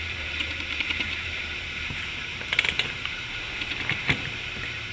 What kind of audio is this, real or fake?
fake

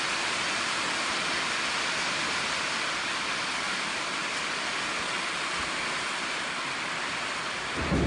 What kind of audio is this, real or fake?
real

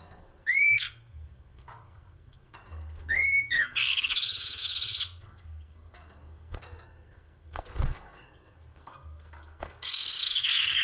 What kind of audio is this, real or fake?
fake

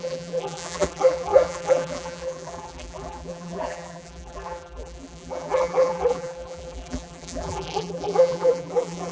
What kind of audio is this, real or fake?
fake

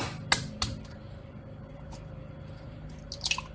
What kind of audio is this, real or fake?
real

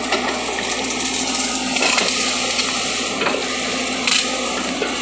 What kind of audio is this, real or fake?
real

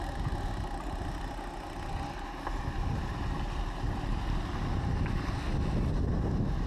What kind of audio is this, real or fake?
real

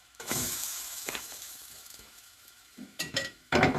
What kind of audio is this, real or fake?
fake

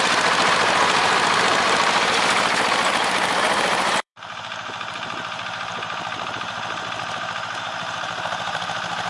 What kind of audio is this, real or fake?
fake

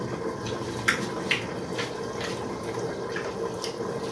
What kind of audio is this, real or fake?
real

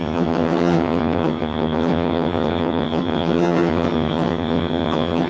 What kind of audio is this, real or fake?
fake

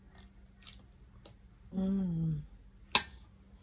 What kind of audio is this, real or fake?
real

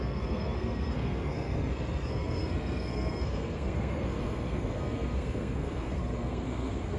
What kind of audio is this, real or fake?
fake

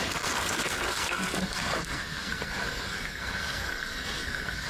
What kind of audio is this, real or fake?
fake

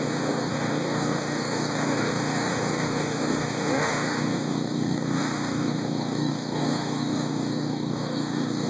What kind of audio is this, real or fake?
fake